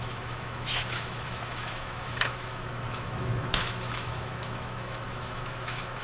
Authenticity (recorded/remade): remade